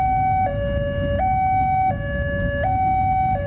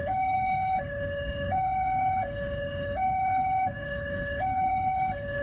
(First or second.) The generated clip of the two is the second